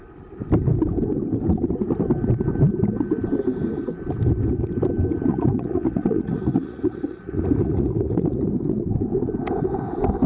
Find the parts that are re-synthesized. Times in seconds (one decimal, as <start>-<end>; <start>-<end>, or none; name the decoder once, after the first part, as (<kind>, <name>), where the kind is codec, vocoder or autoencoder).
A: 5.3-8.5 (vocoder, Vocos)